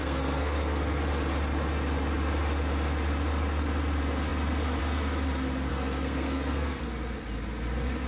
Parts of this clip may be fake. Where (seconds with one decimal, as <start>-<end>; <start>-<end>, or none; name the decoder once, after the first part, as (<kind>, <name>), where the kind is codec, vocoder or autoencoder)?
0.0-1.0 (codec, SNAC); 5.7-6.8